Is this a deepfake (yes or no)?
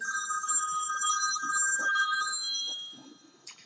yes